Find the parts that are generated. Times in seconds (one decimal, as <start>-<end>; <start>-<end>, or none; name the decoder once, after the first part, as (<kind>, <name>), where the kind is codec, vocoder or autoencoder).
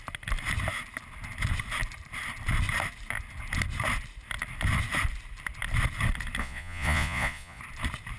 6.4-7.6 (vocoder, Vocos)